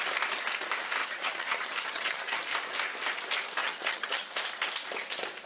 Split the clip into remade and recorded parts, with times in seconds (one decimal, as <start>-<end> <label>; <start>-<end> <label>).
0.0-1.0 recorded; 1.0-2.4 remade; 2.4-3.6 recorded; 3.6-4.3 remade; 4.3-5.5 recorded